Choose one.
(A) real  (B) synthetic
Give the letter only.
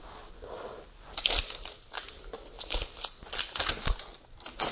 A